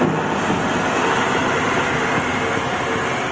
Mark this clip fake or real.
real